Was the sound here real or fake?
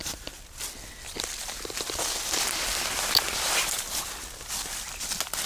real